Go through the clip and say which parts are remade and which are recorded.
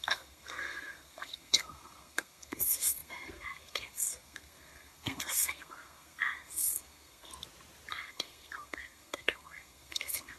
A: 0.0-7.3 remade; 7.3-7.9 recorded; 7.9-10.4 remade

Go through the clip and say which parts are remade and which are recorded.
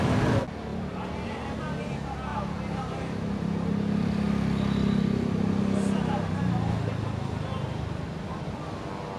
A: 0.0-9.2 recorded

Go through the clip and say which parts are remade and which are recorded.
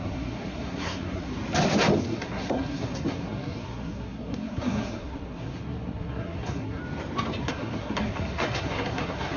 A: 0.0-1.3 remade; 1.3-2.1 recorded; 2.1-6.8 remade; 6.8-7.4 recorded; 7.4-9.4 remade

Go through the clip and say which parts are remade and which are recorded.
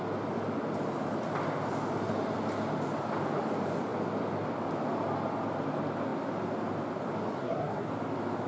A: 0.0-7.4 recorded; 7.4-7.9 remade; 7.9-8.5 recorded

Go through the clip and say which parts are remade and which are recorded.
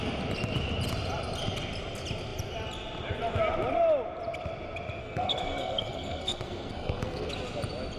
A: 0.0-5.0 recorded; 5.0-7.3 remade; 7.3-8.0 recorded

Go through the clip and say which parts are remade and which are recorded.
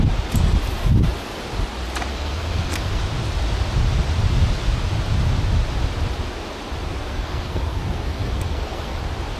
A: 0.0-2.1 recorded; 2.1-3.0 remade; 3.0-7.0 recorded; 7.0-9.0 remade; 9.0-9.4 recorded